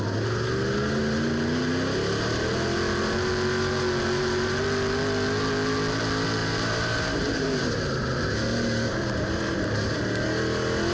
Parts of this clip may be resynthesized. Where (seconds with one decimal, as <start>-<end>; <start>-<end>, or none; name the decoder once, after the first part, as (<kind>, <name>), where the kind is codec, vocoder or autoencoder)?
6.4-10.0 (vocoder, BigVGAN v2)